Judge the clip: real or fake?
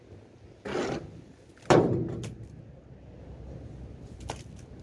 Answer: real